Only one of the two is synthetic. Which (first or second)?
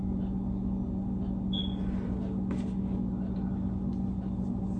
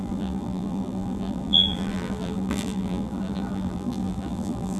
second